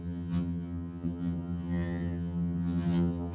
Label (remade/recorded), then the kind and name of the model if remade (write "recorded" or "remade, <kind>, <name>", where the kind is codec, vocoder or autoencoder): remade, vocoder, HiFi-GAN